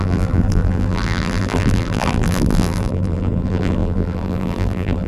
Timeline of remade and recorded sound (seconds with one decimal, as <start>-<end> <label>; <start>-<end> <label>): 0.0-5.1 remade